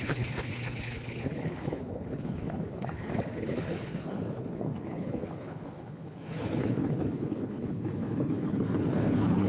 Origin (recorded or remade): remade